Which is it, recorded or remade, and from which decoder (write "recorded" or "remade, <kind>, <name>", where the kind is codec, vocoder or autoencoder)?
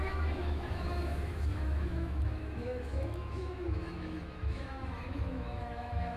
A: remade, autoencoder, DAC-VAE